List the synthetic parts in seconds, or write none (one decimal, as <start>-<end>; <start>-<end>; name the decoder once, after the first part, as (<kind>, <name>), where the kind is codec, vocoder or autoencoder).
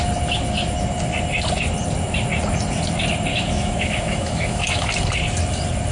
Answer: 3.3-4.9 (autoencoder, DAC-VAE)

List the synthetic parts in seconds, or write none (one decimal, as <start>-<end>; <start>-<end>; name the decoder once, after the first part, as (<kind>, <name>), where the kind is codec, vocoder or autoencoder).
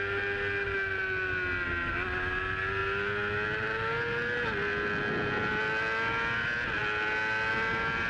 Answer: none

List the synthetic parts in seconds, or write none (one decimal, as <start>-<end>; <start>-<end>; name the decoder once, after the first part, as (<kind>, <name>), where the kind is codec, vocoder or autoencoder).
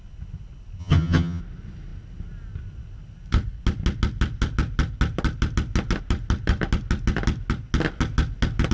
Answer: 0.8-1.4 (vocoder, HiFi-GAN)